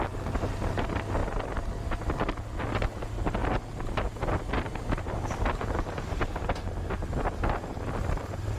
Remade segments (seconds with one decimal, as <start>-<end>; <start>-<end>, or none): none